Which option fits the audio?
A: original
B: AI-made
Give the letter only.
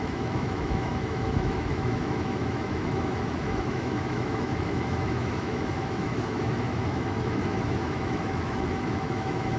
B